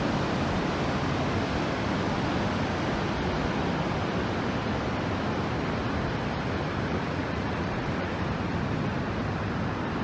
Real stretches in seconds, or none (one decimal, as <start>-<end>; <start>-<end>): 0.0-6.9; 8.1-10.0